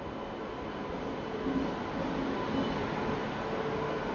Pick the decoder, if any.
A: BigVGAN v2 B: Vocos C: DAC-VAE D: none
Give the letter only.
D